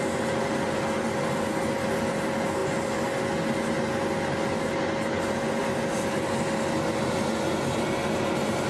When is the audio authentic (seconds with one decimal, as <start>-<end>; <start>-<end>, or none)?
0.0-8.7